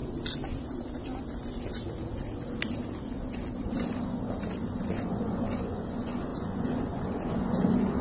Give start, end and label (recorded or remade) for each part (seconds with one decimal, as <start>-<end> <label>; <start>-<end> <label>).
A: 0.0-4.8 recorded; 4.8-8.0 remade